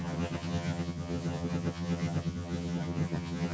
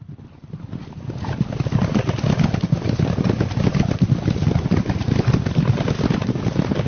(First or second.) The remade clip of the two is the first